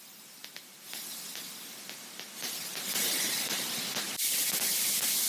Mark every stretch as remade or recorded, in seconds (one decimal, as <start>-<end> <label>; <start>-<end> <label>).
0.0-5.3 recorded